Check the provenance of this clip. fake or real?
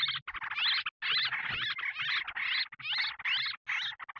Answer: real